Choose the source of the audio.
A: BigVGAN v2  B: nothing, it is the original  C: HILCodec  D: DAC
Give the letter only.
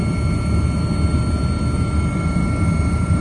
B